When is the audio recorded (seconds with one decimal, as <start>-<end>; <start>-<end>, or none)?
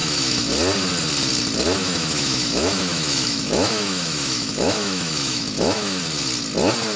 0.5-1.8; 6.0-7.0